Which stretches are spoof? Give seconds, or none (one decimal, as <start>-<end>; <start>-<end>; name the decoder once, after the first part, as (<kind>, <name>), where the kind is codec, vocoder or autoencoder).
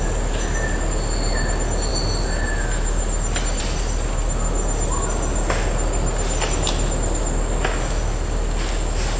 none